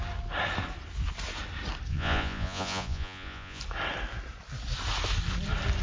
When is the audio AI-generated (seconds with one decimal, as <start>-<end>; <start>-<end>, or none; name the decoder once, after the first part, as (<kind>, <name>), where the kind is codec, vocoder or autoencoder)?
1.9-3.6 (vocoder, Vocos)

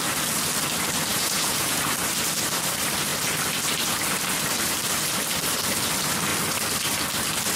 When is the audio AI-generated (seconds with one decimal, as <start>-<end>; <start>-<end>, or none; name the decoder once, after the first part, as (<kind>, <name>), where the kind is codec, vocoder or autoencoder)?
1.1-1.8 (vocoder, Vocos)

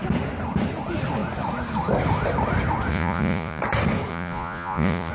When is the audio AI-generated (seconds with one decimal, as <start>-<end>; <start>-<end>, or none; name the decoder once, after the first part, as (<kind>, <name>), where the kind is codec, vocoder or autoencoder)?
2.9-3.6 (vocoder, Vocos); 4.1-5.1